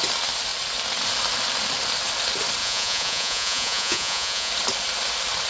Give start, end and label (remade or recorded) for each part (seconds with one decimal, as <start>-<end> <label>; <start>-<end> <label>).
0.0-2.6 recorded; 2.6-4.5 remade; 4.5-5.5 recorded